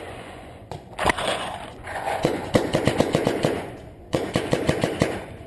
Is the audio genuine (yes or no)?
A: no